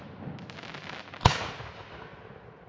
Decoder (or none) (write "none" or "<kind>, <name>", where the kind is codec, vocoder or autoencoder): none